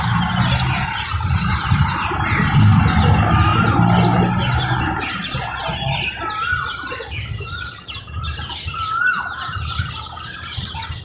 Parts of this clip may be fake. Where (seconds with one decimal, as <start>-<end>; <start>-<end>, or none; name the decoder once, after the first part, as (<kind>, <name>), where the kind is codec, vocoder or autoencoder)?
none